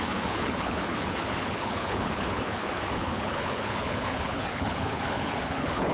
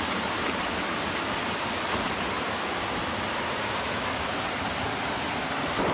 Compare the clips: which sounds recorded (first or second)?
second